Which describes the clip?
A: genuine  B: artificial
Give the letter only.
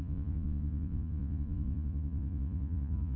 B